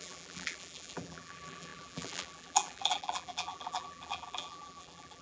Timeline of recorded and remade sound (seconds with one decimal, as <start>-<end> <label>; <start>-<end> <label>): 0.0-5.2 remade